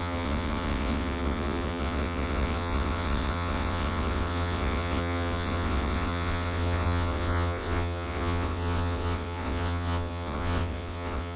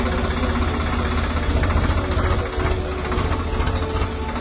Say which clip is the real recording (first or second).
second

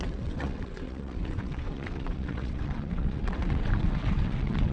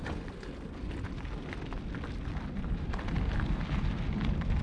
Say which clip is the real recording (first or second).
second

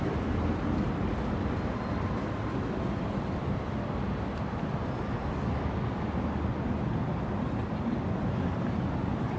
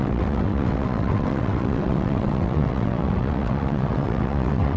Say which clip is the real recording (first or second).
first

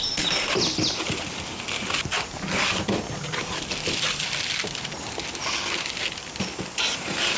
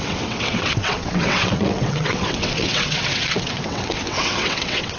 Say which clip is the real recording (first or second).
first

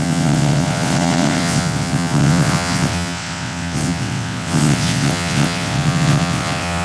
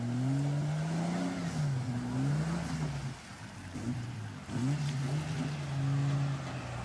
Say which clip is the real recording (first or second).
second